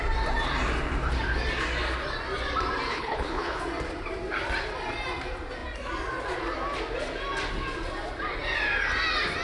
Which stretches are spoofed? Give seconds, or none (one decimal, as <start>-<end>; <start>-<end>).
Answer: 2.9-3.6